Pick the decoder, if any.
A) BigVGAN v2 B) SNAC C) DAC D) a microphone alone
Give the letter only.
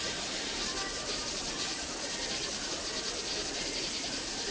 D